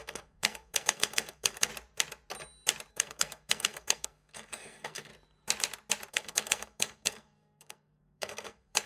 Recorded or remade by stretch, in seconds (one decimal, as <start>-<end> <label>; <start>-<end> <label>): 0.0-1.7 remade; 1.7-2.9 recorded; 2.9-5.1 remade; 5.1-6.1 recorded; 6.1-8.9 remade